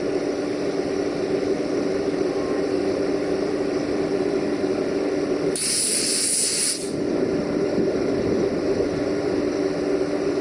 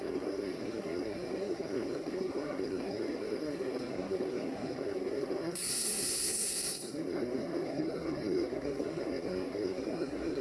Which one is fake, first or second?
second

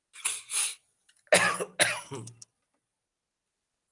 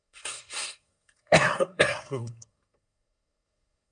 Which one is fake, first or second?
second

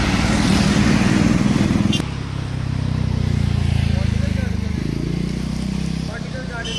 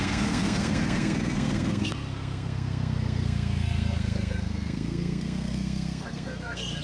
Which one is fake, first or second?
second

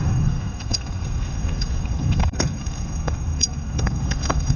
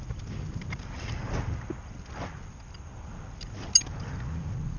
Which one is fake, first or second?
first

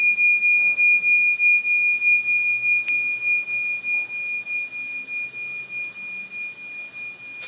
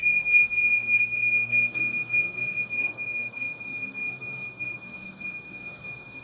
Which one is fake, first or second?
second